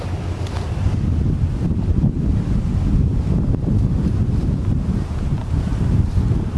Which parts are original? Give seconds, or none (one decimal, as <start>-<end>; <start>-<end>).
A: 0.0-3.1; 3.7-6.6